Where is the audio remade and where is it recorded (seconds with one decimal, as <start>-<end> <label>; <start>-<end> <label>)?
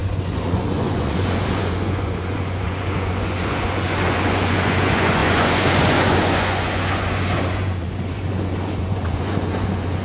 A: 0.0-10.0 remade